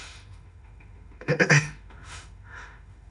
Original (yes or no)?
no